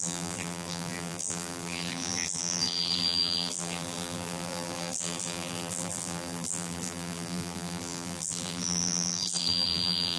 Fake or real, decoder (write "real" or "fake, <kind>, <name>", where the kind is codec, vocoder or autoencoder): fake, vocoder, BigVGAN v2